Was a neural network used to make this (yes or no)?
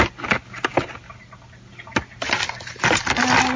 no